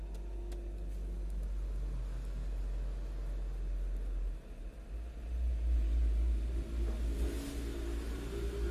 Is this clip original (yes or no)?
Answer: yes